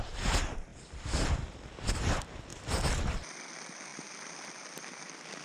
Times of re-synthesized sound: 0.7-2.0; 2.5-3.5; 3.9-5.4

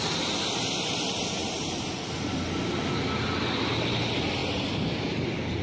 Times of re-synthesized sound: none

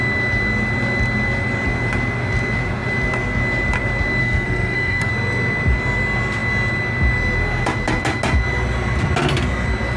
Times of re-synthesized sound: 4.2-5.1

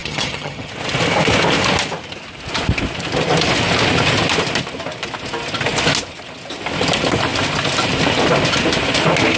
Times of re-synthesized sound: 0.0-0.7

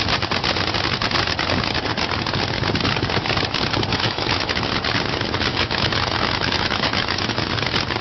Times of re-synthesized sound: 3.9-4.6; 5.5-7.5